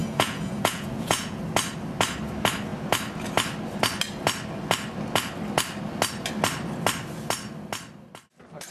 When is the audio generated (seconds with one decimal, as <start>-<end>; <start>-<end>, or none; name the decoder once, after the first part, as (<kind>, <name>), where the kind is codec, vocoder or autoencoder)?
0.0-1.4 (vocoder, Vocos)